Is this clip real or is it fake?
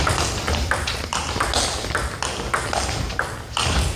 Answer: real